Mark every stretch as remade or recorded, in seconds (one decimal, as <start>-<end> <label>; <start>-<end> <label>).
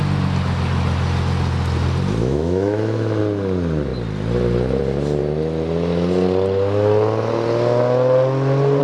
0.0-2.2 recorded; 2.2-3.2 remade; 3.2-8.8 recorded